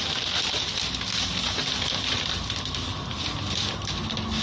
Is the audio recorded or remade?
recorded